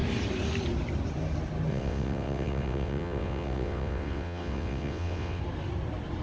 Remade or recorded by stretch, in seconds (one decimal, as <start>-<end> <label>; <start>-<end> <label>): 0.0-1.7 recorded; 1.7-5.4 remade; 5.4-6.2 recorded